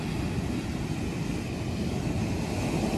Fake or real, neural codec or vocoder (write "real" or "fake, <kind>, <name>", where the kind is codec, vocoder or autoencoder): real